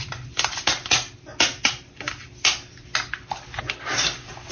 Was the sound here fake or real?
real